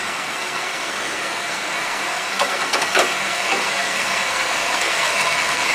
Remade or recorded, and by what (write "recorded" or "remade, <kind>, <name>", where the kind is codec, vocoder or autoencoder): remade, codec, SNAC